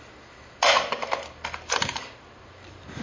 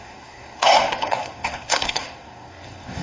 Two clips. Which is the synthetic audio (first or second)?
second